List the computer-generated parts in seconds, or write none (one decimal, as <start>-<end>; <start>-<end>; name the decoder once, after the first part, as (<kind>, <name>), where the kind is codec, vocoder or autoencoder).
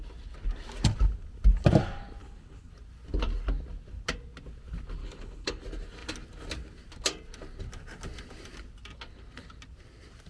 2.2-2.7 (codec, HILCodec); 5.0-5.6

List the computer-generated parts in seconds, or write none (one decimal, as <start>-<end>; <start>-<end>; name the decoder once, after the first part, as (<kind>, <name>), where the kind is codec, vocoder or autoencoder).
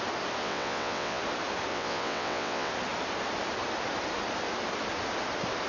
0.4-1.2 (vocoder, WaveNeXt); 1.7-2.7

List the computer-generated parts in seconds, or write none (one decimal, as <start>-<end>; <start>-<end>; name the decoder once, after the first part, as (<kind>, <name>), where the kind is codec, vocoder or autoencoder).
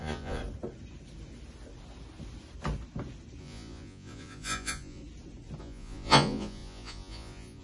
0.0-0.4 (vocoder, Vocos); 3.4-5.0; 5.6-7.6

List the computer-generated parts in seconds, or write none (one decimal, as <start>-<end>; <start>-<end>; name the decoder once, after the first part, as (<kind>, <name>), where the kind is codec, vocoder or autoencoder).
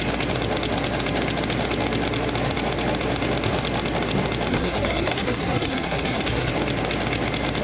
4.5-6.5 (codec, SNAC)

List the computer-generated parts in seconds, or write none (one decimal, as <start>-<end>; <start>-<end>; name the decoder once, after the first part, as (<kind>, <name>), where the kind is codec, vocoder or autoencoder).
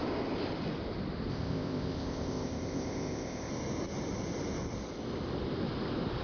1.3-3.5 (codec, ZipCodec)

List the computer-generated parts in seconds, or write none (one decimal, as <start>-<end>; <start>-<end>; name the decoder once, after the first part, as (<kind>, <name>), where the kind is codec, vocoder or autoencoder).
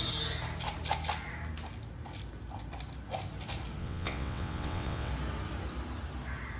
3.8-5.1 (vocoder, WaveNeXt)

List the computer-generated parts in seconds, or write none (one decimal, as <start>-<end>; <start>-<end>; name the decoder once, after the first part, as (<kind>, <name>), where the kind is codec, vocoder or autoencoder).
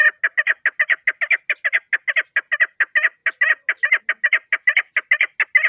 none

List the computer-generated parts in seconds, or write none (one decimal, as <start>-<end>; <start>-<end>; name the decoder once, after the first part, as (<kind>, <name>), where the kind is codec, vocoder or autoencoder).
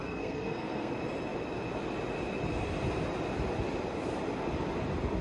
0.0-0.9 (codec, SNAC)